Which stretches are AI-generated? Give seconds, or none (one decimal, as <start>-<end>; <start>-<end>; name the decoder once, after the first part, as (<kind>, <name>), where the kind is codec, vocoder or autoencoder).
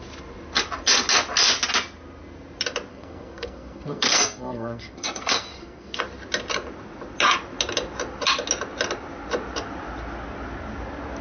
2.9-6.0 (codec, SNAC)